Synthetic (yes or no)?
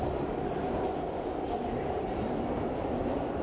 no